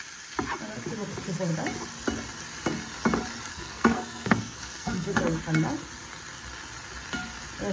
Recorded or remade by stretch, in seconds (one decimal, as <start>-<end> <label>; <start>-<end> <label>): 0.0-3.5 recorded; 3.5-5.4 remade; 5.4-7.7 recorded